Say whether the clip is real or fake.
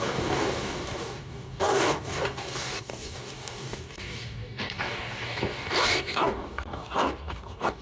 fake